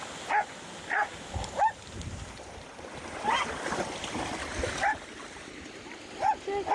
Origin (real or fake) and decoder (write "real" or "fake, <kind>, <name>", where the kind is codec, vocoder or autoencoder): real